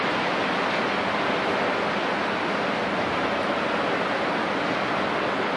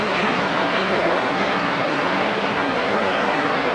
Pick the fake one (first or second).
second